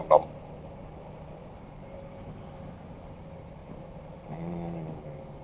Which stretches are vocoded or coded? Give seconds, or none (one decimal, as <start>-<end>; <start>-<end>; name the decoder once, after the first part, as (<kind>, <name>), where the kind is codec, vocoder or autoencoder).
none

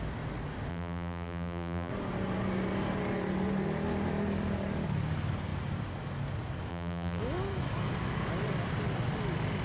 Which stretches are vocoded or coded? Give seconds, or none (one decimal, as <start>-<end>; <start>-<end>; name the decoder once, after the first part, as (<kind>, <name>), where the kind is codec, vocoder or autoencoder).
0.7-1.9 (vocoder, BigVGAN v2); 6.7-7.2